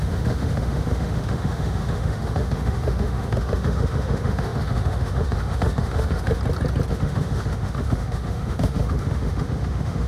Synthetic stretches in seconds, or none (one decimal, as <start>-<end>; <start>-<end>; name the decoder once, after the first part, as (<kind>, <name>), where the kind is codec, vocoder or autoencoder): 0.0-6.4 (autoencoder, DAC-VAE); 6.9-10.1